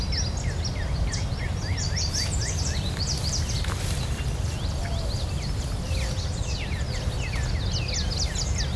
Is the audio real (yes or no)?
yes